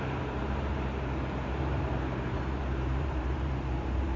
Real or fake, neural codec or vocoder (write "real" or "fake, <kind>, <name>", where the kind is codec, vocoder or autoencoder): fake, vocoder, BigVGAN v2